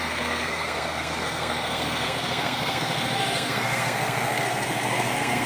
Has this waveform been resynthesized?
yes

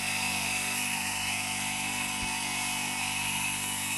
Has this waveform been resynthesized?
yes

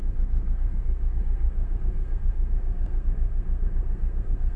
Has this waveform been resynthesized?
yes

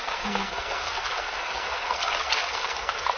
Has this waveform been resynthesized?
yes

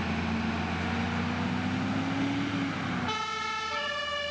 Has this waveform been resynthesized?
no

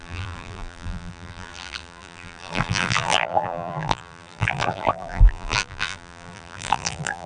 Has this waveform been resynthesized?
yes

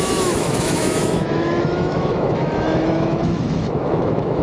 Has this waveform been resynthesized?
yes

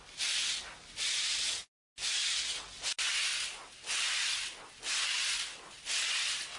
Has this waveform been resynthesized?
no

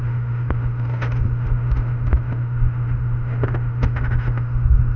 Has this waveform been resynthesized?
yes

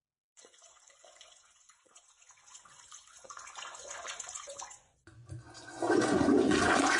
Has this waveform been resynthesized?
yes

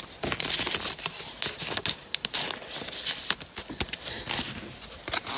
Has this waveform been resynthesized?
no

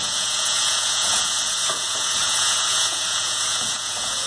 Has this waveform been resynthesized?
yes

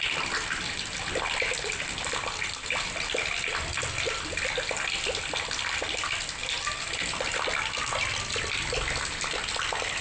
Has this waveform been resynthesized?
no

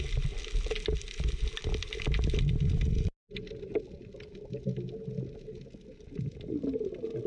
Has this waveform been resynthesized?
no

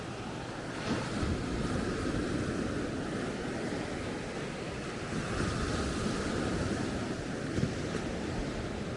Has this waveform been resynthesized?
no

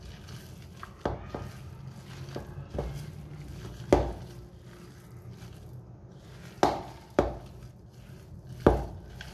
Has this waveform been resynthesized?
no